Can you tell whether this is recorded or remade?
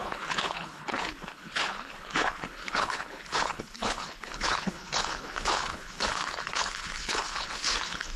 remade